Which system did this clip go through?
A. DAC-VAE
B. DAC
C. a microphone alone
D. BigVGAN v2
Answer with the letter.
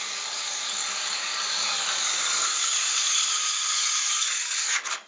B